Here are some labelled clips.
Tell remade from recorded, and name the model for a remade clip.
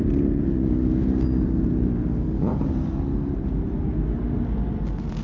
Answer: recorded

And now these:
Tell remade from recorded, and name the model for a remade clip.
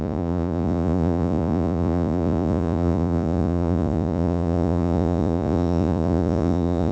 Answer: remade, vocoder, Vocos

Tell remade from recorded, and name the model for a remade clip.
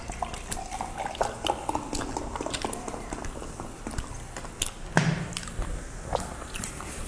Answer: recorded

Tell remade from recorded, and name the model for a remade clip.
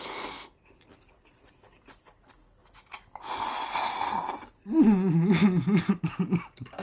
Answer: recorded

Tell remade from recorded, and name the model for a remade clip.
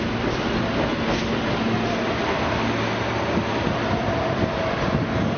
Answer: recorded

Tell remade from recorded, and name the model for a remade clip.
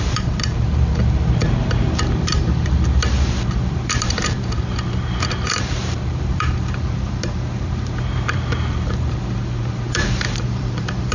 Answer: remade, vocoder, BigVGAN v2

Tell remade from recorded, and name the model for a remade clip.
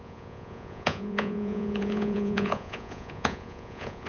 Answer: remade, vocoder, Vocos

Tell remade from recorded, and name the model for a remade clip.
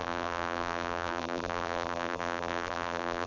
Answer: remade, vocoder, BigVGAN v2